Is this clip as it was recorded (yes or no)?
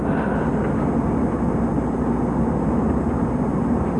yes